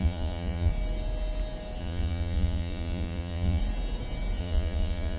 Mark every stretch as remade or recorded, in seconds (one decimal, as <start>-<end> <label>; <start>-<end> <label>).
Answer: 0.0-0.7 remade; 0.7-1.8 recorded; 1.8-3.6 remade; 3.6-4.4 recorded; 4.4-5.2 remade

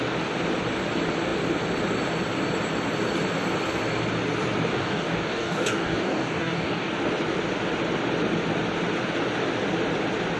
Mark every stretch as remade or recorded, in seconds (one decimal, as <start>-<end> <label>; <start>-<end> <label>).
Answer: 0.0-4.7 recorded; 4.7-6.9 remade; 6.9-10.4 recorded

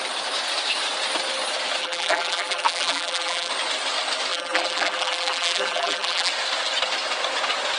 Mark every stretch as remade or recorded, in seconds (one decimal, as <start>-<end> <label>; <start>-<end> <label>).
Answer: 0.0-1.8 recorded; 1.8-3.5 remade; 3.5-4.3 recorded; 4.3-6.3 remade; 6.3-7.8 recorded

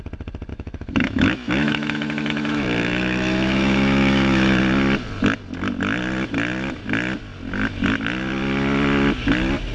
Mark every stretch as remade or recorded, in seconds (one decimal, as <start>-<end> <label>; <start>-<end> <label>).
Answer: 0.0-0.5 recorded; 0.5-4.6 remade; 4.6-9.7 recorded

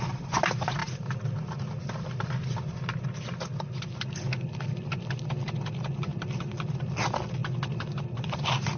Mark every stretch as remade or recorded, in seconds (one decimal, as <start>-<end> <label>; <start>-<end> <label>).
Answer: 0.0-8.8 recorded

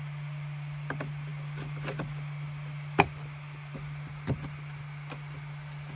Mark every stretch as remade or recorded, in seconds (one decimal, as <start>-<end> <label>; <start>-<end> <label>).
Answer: 0.0-6.0 recorded

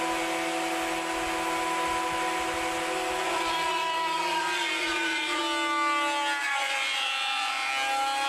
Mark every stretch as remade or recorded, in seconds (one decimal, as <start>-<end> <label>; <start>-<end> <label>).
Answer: 0.0-3.2 recorded; 3.2-5.4 remade; 5.4-6.4 recorded; 6.4-7.7 remade; 7.7-8.3 recorded

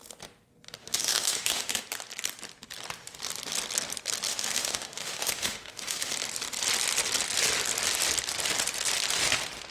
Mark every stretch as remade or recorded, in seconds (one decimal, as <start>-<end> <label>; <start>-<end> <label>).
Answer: 0.0-0.8 recorded; 0.8-1.8 remade; 1.8-4.3 recorded; 4.3-6.1 remade; 6.1-9.7 recorded